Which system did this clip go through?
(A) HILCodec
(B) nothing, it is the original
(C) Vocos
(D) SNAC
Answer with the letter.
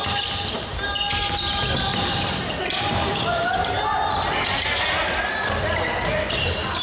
B